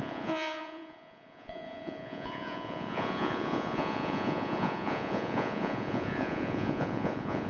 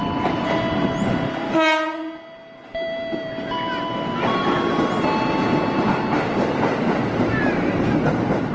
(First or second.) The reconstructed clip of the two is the first